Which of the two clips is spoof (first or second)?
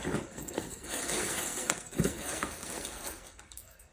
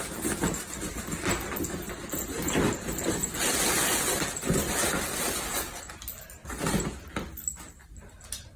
first